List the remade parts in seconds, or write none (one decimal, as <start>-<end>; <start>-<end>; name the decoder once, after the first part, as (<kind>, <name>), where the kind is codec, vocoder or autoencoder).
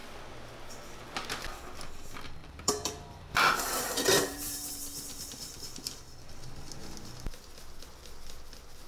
2.4-4.7 (vocoder, BigVGAN v2)